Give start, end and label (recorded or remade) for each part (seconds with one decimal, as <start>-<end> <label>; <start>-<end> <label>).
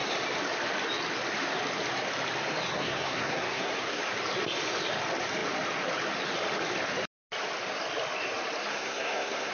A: 0.0-2.7 recorded; 2.7-4.0 remade; 4.0-8.7 recorded; 8.7-9.5 remade